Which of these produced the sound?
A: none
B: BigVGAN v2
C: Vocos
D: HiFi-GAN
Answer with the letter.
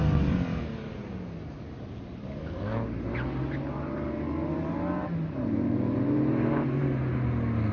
A